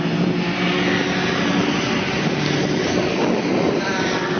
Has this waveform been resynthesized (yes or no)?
no